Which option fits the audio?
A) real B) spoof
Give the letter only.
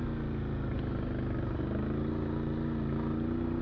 A